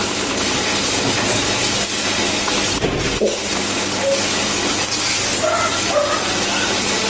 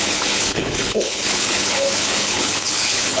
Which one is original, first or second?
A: first